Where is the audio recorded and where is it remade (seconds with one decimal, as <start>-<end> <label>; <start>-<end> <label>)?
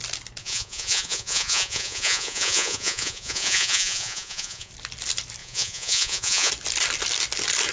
0.0-0.4 recorded; 0.4-4.7 remade; 4.7-5.4 recorded; 5.4-6.5 remade; 6.5-7.7 recorded